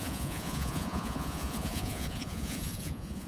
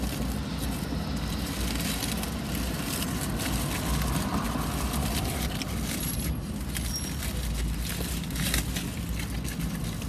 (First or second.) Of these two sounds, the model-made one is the first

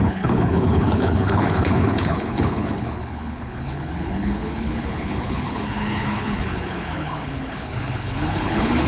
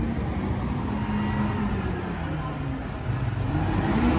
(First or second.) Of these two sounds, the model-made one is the first